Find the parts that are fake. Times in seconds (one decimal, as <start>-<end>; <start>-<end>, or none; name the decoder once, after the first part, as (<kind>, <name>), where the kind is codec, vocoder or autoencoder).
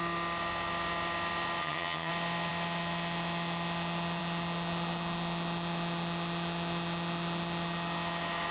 1.6-2.1 (vocoder, HiFi-GAN)